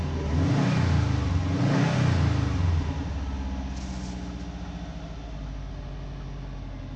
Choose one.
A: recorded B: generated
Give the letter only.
A